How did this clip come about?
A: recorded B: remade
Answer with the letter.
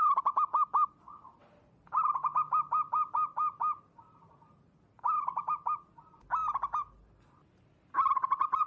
A